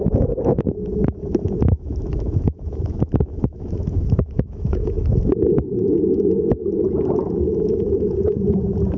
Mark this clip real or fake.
fake